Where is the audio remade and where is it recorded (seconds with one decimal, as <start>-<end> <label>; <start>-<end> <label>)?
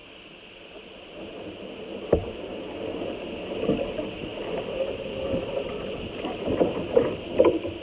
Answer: 0.0-7.8 recorded